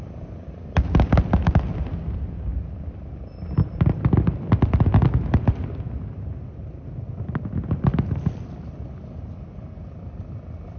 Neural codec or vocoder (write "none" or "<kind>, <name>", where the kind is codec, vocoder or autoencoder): none